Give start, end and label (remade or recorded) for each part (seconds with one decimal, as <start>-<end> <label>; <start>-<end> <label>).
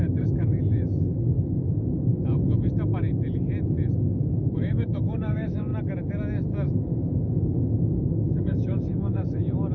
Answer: 0.0-2.1 remade; 2.1-4.3 recorded; 4.3-5.7 remade; 5.7-6.7 recorded; 6.7-9.7 remade